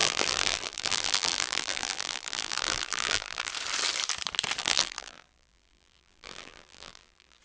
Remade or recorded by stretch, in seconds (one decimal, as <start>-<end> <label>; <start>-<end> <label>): 0.0-3.5 remade; 3.5-4.6 recorded; 4.6-7.4 remade